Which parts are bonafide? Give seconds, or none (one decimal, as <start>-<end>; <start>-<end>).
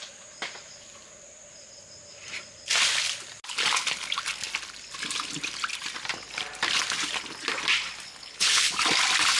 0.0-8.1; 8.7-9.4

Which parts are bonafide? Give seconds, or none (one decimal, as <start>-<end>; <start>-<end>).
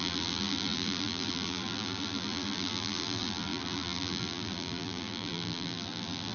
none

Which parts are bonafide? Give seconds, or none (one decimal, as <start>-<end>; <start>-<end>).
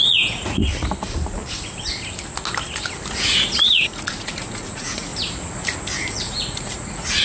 0.6-3.1; 5.1-6.1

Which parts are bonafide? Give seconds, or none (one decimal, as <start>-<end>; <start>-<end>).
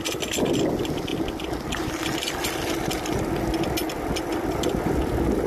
0.0-5.5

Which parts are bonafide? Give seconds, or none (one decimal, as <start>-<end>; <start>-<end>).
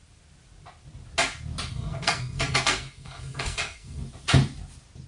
0.0-1.7; 4.0-5.1